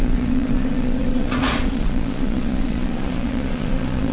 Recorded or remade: remade